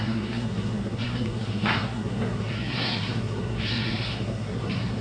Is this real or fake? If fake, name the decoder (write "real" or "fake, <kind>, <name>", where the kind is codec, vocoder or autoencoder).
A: fake, codec, SNAC